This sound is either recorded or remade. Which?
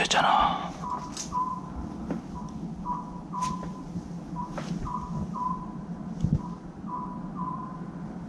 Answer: recorded